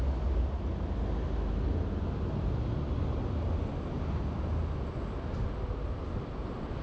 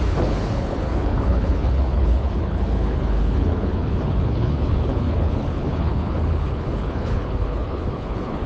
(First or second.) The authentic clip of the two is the first